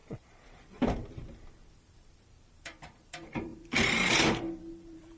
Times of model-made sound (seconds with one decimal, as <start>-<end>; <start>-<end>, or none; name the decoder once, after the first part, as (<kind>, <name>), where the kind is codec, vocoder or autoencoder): 0.0-5.2 (vocoder, BigVGAN v2)